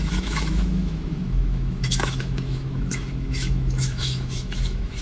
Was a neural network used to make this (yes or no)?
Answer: yes